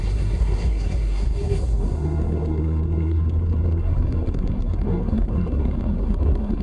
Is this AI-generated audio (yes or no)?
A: yes